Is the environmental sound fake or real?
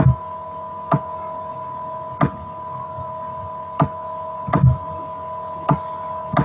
real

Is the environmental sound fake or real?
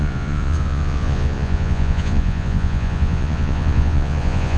fake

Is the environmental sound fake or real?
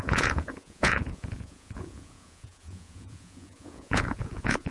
fake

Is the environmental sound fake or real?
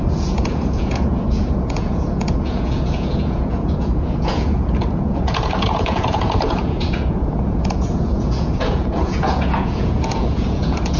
fake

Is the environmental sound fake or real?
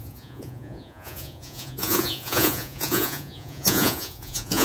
fake